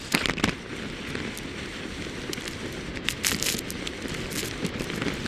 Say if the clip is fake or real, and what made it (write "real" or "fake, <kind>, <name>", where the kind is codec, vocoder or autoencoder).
real